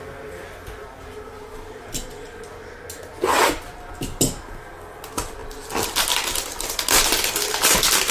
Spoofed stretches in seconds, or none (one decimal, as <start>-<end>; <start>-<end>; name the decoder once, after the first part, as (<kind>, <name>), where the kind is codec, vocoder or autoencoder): 5.4-6.0 (vocoder, BigVGAN v2)